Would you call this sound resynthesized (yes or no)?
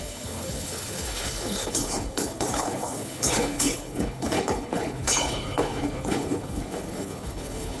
yes